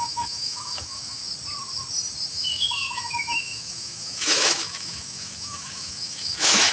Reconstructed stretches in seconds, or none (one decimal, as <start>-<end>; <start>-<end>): 0.0-1.2; 2.3-6.7